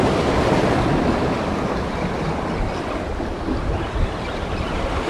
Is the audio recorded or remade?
recorded